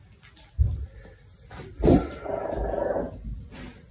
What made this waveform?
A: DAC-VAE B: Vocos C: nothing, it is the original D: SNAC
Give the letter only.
C